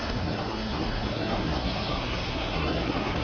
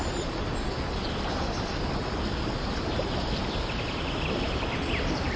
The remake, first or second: first